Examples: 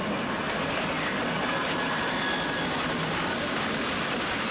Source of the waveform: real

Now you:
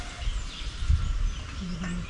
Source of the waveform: real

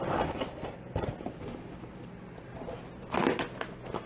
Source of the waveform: real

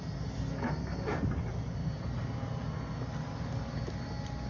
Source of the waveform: real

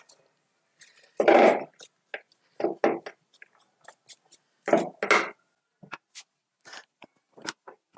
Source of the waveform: real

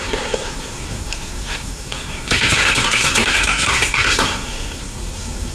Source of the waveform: fake